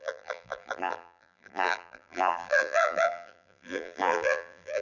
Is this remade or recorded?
remade